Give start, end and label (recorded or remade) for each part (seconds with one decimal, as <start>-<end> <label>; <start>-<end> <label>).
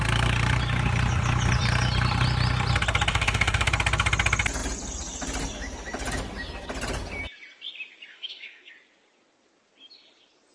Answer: 0.0-3.1 recorded; 3.1-3.7 remade; 3.7-8.1 recorded; 8.1-8.7 remade; 8.7-10.5 recorded